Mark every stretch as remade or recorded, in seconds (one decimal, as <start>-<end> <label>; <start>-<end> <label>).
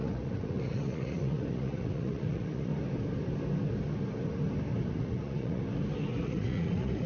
0.0-2.7 remade; 2.7-4.9 recorded; 4.9-5.6 remade; 5.6-6.2 recorded; 6.2-7.1 remade